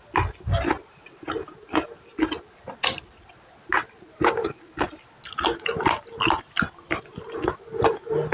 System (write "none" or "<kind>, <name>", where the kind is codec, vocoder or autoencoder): none